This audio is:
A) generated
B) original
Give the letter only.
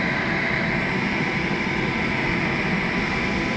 B